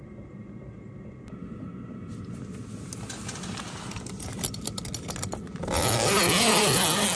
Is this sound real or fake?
real